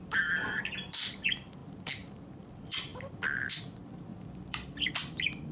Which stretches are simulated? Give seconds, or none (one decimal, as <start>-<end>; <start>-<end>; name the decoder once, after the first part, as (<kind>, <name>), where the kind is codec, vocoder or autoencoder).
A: 0.0-5.5 (vocoder, BigVGAN v2)